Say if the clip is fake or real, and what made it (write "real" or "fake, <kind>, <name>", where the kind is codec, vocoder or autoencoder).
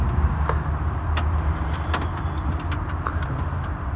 real